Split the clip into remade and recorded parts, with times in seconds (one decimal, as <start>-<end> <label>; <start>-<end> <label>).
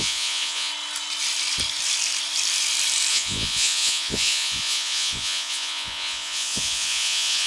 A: 0.0-0.7 remade; 0.7-3.1 recorded; 3.1-7.5 remade